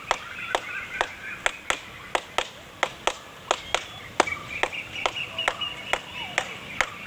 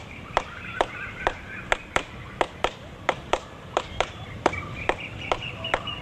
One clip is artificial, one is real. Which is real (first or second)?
first